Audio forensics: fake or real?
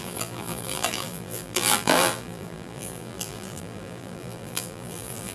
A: fake